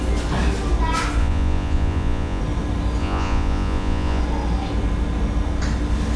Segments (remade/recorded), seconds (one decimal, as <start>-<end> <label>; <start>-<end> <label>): 0.0-1.2 recorded; 1.2-2.4 remade; 2.4-3.0 recorded; 3.0-4.2 remade; 4.2-6.2 recorded